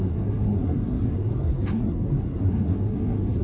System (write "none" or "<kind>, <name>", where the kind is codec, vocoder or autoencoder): codec, SNAC